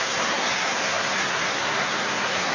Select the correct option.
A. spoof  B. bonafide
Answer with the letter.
A